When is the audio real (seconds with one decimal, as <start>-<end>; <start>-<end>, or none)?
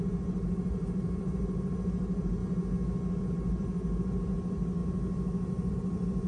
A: 2.4-3.2; 4.8-5.7